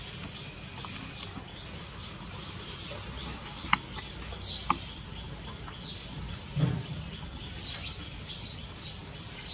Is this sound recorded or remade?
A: recorded